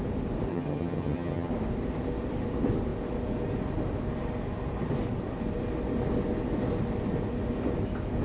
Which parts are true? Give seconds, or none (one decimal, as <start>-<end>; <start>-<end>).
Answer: 0.0-0.5; 1.5-8.2

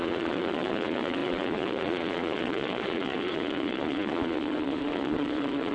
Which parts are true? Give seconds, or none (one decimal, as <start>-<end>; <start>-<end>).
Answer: none

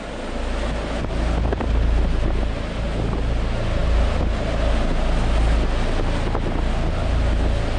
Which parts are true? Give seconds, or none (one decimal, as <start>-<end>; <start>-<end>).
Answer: 0.0-7.8

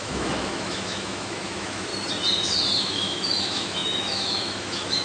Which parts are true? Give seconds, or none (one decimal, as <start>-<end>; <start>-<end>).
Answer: 1.9-2.8

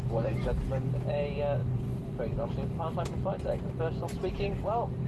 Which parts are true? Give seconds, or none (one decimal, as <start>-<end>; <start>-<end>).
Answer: 0.0-1.6

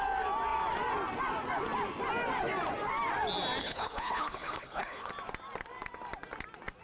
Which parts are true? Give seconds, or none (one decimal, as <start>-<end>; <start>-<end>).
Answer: 0.0-3.6; 5.1-6.8